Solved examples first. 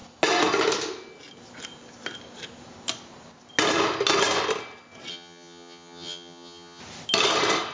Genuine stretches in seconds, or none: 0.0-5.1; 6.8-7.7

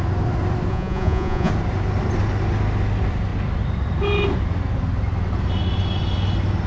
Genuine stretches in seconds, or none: 0.0-0.7; 1.5-6.7